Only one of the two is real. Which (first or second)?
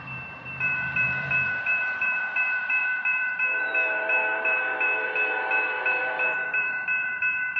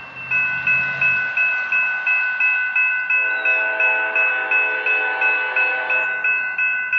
second